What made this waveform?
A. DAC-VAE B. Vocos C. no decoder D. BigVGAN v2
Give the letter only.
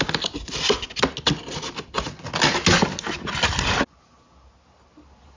C